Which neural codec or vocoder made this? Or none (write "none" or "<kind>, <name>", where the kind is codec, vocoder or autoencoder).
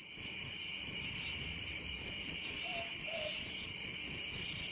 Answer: none